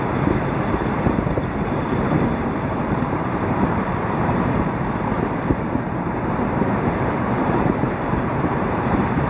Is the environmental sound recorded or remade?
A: remade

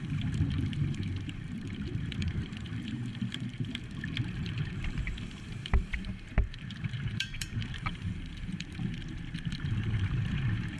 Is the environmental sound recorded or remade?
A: remade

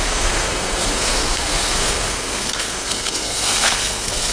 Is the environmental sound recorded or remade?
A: remade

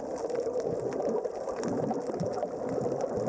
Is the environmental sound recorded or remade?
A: recorded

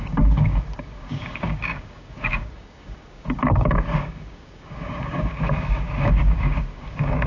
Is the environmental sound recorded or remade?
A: remade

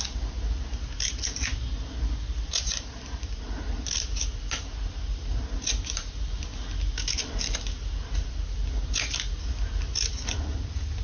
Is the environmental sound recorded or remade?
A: recorded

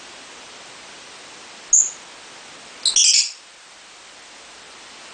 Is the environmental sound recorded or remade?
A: recorded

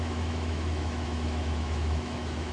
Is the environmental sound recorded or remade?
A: remade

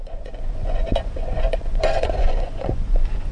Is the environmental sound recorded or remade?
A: remade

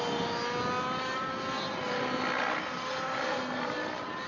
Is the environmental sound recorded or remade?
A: recorded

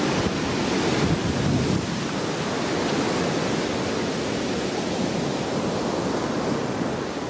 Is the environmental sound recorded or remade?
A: recorded